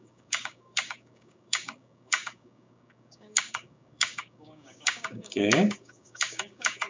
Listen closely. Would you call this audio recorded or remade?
remade